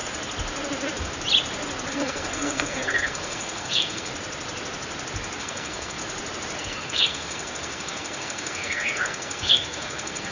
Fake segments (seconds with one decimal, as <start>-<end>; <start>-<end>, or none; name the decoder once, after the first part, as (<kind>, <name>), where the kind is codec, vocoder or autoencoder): 1.9-4.1 (codec, SNAC); 5.4-6.0; 6.6-10.3